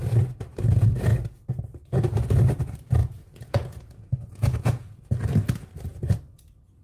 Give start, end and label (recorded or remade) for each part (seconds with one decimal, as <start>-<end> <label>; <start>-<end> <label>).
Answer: 0.0-3.0 recorded; 3.0-5.1 remade; 5.1-6.8 recorded